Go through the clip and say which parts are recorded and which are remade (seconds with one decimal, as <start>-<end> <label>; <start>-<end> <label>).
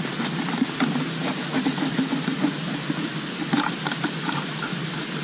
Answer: 0.0-5.2 recorded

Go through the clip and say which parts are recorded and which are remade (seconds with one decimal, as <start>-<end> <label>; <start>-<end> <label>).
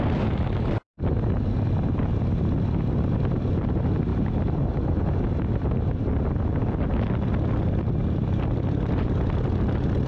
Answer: 0.0-10.1 recorded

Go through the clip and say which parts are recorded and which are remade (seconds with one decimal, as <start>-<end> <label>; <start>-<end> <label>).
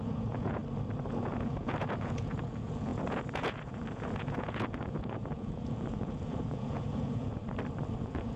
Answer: 0.0-0.6 remade; 0.6-1.1 recorded; 1.1-7.4 remade; 7.4-8.0 recorded; 8.0-8.4 remade